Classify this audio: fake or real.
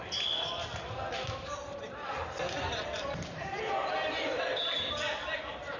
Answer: fake